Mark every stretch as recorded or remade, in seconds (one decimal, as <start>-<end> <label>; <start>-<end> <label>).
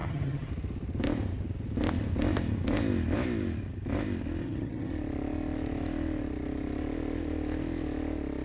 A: 0.0-0.5 remade; 0.5-4.4 recorded; 4.4-4.9 remade; 4.9-8.4 recorded